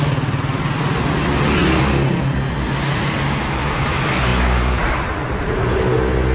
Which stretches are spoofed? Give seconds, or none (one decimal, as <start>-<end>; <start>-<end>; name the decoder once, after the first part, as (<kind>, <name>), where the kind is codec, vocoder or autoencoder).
none